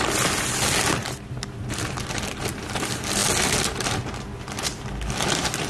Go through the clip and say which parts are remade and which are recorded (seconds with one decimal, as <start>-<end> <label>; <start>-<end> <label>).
0.0-5.7 recorded